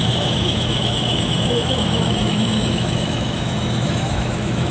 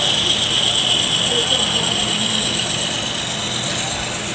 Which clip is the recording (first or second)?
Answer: second